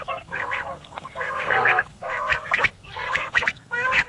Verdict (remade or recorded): remade